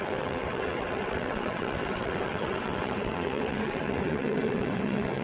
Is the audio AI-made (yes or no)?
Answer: yes